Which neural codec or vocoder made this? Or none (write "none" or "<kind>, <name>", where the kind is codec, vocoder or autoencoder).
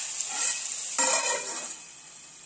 none